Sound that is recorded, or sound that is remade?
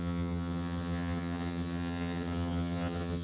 remade